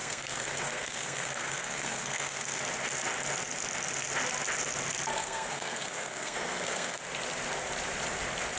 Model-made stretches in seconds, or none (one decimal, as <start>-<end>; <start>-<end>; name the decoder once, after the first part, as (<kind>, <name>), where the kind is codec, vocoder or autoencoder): 0.0-2.6 (codec, SNAC); 5.1-7.0

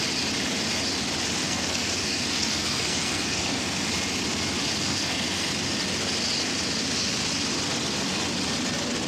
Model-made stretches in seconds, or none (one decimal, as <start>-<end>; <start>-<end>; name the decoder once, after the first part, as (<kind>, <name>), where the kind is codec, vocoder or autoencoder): 1.4-3.9 (codec, SNAC); 4.8-5.5

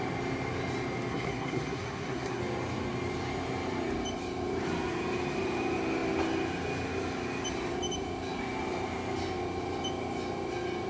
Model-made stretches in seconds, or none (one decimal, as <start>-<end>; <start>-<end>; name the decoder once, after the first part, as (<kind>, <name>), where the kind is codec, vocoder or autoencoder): 1.1-2.4 (codec, SNAC)

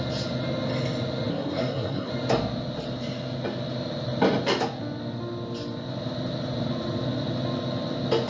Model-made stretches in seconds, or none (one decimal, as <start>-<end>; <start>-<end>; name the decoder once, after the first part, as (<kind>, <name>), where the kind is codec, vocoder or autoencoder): 1.3-2.1 (codec, SNAC)

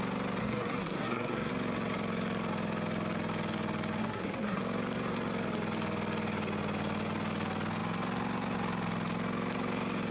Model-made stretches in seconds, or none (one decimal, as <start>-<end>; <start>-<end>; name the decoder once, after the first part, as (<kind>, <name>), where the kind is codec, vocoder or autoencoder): 0.4-1.5 (codec, SNAC); 4.0-4.6

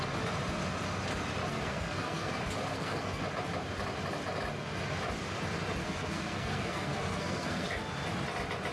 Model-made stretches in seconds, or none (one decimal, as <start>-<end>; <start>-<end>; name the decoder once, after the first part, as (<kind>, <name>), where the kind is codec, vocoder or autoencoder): 1.5-2.3 (codec, SNAC); 2.7-3.2; 5.8-7.8

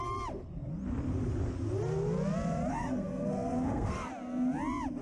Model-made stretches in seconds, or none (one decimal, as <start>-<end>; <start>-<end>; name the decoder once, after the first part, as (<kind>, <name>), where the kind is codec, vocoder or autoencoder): 2.7-4.1 (codec, SNAC)